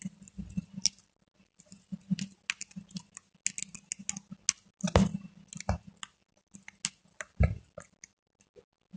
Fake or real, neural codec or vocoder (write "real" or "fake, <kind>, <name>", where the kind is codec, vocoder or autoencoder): real